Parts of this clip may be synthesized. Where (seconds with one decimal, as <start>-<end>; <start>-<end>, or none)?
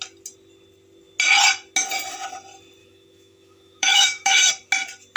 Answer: 2.8-4.5